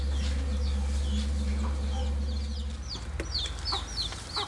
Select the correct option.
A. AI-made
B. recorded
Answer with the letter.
B